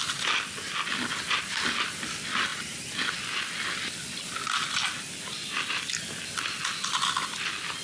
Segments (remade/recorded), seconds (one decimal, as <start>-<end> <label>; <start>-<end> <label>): 0.0-7.8 recorded